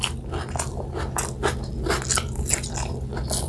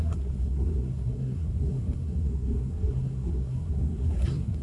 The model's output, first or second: second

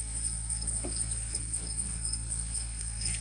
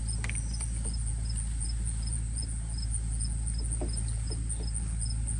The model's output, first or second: first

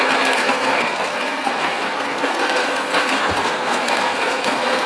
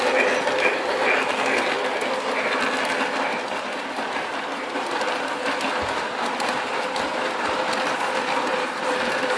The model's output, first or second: first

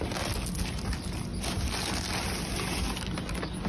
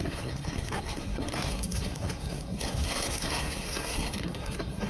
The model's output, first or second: second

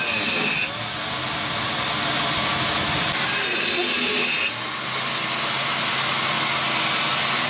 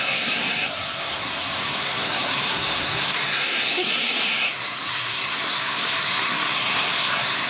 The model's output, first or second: second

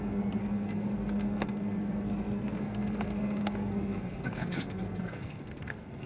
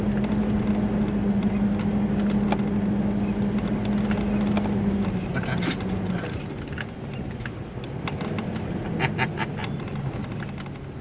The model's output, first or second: first